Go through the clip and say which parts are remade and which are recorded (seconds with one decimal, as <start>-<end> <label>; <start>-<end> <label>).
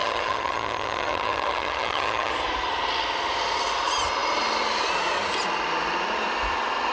0.0-2.3 remade; 2.3-6.9 recorded